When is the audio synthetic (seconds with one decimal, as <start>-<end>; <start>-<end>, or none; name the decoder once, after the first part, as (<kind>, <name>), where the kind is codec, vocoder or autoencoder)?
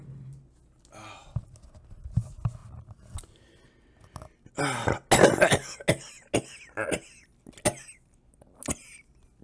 none